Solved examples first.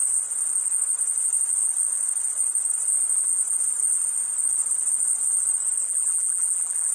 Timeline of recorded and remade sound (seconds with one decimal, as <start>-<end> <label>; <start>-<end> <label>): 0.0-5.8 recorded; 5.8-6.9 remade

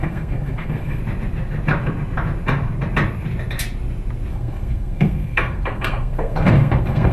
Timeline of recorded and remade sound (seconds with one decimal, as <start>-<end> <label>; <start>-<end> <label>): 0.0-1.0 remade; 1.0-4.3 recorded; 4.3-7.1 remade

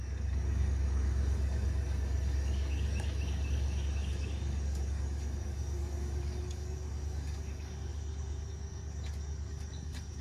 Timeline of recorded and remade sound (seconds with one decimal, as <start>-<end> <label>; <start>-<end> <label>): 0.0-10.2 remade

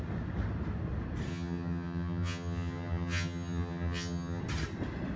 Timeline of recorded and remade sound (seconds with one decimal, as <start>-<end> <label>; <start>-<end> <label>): 0.0-1.3 recorded; 1.3-4.4 remade; 4.4-5.2 recorded